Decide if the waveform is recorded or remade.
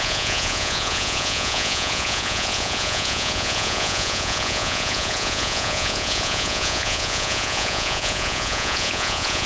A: remade